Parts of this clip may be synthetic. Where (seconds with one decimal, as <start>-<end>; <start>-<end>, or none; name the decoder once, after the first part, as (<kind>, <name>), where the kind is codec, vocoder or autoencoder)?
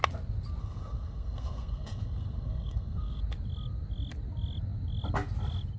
0.6-3.2 (codec, SNAC)